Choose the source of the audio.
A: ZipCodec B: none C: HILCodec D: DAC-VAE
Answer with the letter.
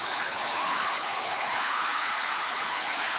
C